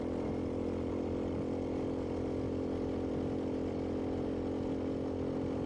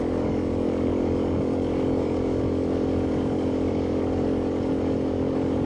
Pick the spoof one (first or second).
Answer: second